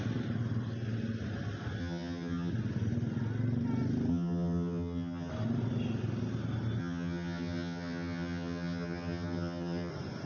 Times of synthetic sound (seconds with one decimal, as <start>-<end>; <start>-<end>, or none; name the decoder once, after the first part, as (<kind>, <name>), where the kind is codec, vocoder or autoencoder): 1.8-2.5 (vocoder, HiFi-GAN); 4.1-5.3; 6.8-9.9